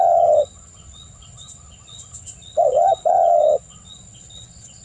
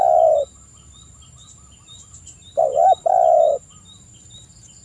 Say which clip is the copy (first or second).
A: first